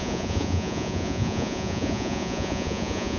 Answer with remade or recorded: remade